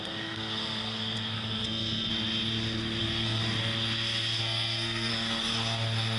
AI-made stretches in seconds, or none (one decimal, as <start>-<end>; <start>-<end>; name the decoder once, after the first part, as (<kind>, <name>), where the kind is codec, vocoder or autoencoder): 0.0-2.1 (codec, SNAC); 3.0-3.4; 4.4-5.1